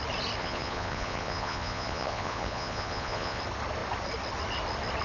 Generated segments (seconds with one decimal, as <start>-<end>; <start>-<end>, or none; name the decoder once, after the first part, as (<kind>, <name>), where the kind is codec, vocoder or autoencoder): 0.4-3.4 (vocoder, Vocos)

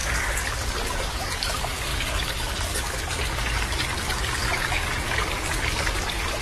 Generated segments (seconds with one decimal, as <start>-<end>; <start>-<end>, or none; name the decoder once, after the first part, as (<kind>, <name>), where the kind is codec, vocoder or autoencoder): 0.0-6.4 (codec, DAC)

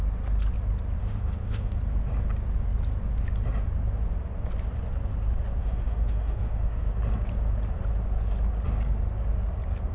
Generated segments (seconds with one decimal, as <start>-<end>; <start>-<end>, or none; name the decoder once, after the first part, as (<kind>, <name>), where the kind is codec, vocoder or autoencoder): 1.0-1.8 (autoencoder, DAC-VAE); 5.6-6.9

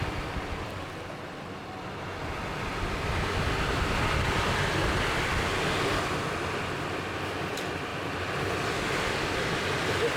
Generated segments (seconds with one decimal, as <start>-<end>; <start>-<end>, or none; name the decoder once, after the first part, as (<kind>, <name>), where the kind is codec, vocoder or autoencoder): none

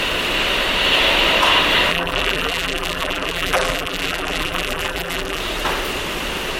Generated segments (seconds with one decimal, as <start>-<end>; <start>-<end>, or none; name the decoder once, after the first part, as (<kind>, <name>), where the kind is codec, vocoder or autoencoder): 1.9-5.4 (vocoder, BigVGAN v2)

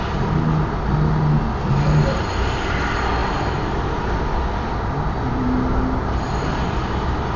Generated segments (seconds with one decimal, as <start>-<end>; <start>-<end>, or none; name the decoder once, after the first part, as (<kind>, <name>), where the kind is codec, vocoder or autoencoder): none